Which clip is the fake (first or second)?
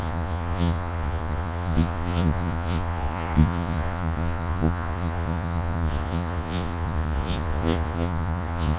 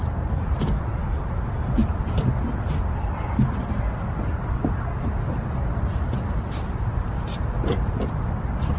first